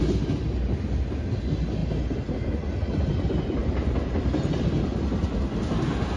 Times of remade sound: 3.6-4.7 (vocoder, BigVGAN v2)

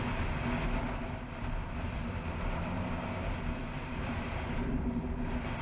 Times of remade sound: 1.6-5.0 (vocoder, BigVGAN v2)

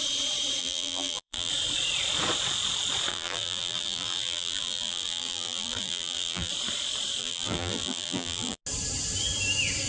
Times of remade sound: 0.6-1.5 (vocoder, BigVGAN v2); 3.1-6.5; 7.2-8.6

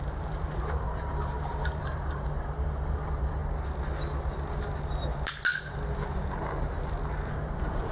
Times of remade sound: 0.0-3.4 (vocoder, BigVGAN v2); 7.3-7.9